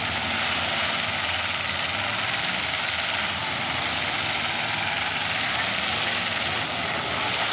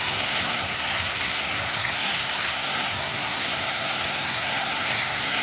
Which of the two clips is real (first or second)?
first